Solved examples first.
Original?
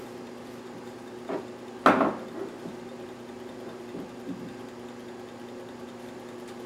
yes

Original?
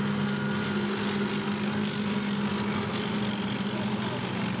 yes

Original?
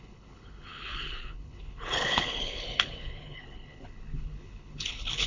no